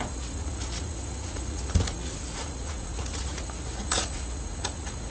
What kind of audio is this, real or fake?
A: fake